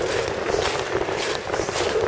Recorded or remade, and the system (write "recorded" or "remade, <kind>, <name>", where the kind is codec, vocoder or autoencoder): recorded